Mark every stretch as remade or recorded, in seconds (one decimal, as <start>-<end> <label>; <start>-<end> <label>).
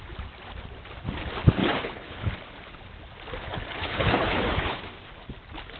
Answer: 0.0-1.6 recorded; 1.6-2.3 remade; 2.3-3.5 recorded; 3.5-4.8 remade; 4.8-5.8 recorded